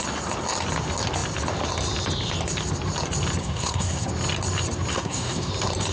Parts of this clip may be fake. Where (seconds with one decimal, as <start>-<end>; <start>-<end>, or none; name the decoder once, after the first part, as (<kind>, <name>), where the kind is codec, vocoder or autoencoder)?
3.4-4.1 (codec, SNAC); 4.9-5.5